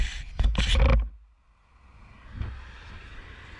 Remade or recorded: recorded